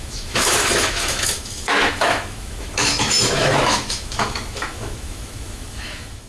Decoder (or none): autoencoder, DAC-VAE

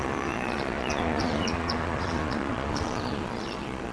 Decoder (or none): vocoder, Vocos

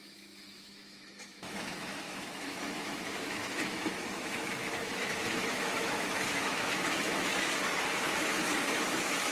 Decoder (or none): autoencoder, DAC-VAE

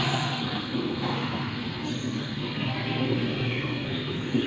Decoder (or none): codec, SNAC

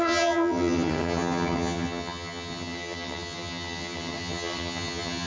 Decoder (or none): vocoder, HiFi-GAN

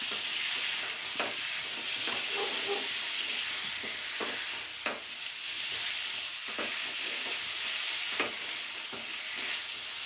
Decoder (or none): none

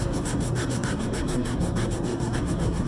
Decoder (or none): codec, SNAC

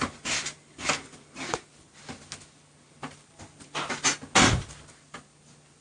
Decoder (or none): none